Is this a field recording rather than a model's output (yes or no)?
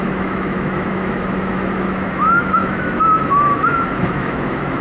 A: no